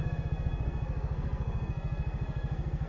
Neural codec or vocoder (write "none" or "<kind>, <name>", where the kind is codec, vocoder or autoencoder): codec, SNAC